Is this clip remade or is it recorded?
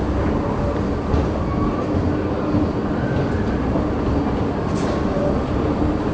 recorded